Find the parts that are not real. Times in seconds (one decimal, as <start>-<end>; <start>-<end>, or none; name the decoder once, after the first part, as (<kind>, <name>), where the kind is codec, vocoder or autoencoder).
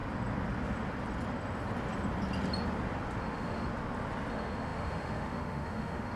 3.2-3.7 (autoencoder, DAC-VAE); 4.3-6.2